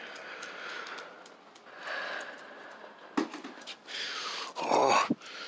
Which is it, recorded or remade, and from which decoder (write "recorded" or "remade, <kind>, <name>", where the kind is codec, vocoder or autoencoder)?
recorded